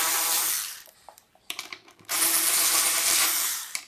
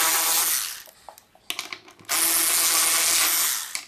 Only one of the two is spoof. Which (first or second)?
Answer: first